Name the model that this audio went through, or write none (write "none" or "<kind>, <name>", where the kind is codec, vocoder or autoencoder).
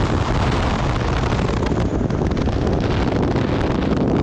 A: none